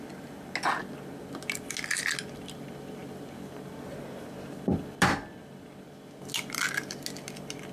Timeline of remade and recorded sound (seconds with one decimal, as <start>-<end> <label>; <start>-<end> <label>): 0.0-7.7 recorded